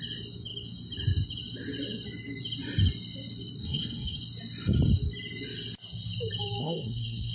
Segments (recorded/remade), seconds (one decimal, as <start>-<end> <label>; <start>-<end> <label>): 0.0-3.6 recorded; 3.6-4.2 remade; 4.2-6.6 recorded; 6.6-7.3 remade

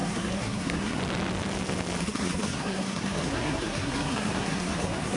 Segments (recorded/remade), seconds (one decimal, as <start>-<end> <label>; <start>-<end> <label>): 0.0-1.0 remade; 1.0-2.0 recorded; 2.0-5.2 remade

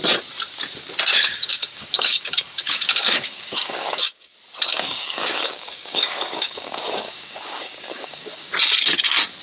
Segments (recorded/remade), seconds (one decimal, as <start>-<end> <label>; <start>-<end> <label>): 0.0-1.1 recorded; 1.1-4.3 remade; 4.3-4.7 recorded; 4.7-8.5 remade; 8.5-9.4 recorded